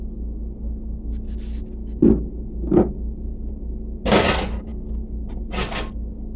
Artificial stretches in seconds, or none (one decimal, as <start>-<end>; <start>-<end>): none